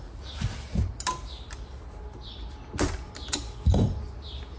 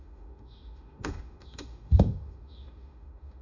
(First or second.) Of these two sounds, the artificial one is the second